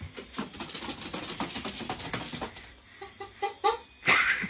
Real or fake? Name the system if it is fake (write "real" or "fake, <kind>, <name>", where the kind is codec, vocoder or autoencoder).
real